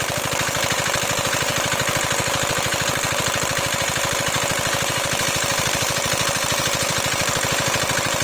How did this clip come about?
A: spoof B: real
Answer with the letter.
B